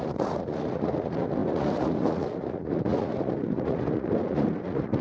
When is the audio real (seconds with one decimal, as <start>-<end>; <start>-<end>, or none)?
none